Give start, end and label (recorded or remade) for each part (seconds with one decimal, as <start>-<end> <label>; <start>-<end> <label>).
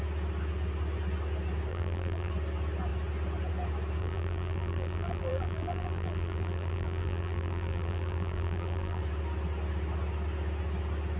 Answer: 0.0-1.7 recorded; 1.7-2.3 remade; 2.3-4.0 recorded; 4.0-9.0 remade; 9.0-11.2 recorded